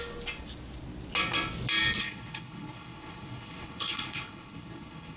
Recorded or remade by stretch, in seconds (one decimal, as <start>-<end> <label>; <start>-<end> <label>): 0.0-2.0 recorded; 2.0-5.2 remade